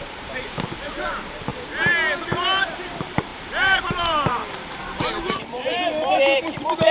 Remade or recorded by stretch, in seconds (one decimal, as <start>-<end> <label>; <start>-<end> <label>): 0.0-1.5 remade; 1.5-2.4 recorded; 2.4-6.9 remade